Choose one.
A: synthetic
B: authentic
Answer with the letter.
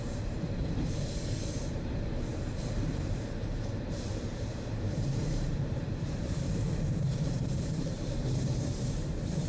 A